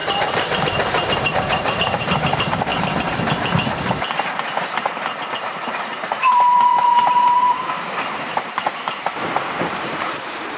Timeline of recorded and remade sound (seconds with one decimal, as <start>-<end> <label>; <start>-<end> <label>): 0.0-2.7 remade; 2.7-5.4 recorded; 5.4-10.6 remade